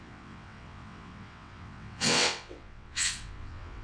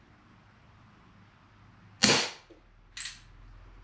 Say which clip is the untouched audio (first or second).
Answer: second